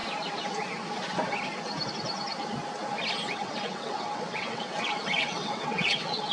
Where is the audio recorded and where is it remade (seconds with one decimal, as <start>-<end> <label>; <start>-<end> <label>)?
0.0-3.2 recorded; 3.2-6.3 remade